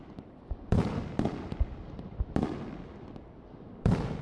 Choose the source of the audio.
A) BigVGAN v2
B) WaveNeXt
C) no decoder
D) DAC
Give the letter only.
A